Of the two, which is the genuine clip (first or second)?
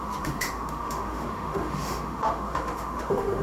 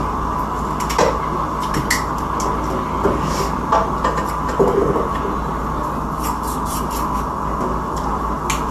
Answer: second